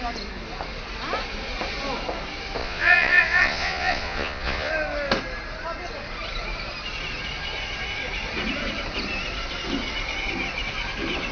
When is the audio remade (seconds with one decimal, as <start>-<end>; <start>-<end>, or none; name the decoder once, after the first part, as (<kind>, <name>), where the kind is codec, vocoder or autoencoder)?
2.6-4.7 (vocoder, Vocos)